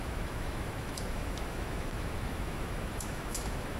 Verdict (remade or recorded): remade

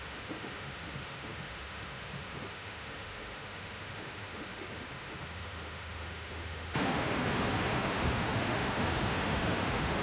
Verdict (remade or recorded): remade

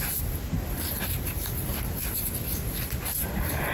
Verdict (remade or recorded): recorded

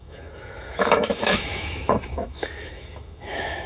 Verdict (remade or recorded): remade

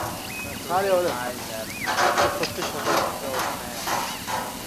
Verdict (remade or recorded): recorded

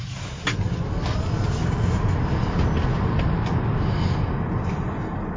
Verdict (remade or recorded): recorded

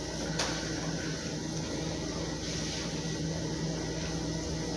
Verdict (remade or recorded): recorded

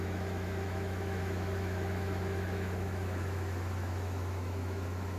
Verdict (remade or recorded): remade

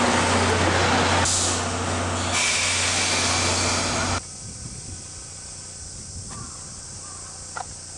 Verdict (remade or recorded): recorded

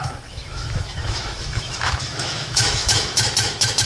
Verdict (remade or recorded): remade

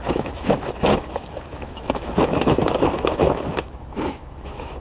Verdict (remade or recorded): remade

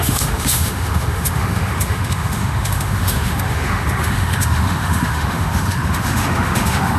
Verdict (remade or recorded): remade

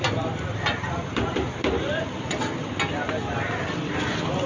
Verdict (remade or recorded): recorded